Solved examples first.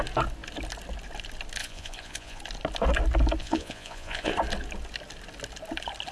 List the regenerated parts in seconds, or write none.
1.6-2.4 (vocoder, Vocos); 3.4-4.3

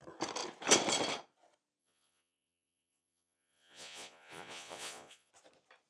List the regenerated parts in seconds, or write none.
1.8-5.3 (vocoder, Vocos)